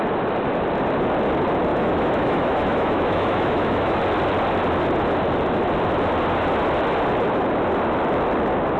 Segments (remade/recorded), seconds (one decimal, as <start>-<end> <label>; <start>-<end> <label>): 0.0-1.7 recorded; 1.7-4.0 remade; 4.0-8.8 recorded